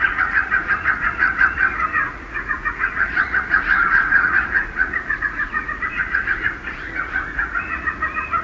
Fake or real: fake